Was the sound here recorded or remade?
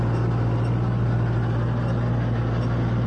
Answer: recorded